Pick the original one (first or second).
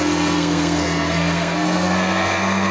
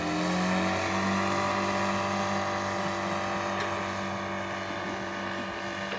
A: second